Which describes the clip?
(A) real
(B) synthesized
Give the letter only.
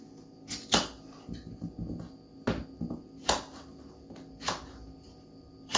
A